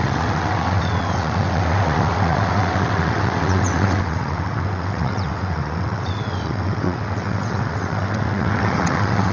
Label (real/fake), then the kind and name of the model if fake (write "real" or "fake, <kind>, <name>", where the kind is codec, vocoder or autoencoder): fake, vocoder, WaveNeXt